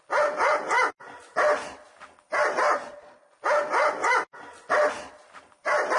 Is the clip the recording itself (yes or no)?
yes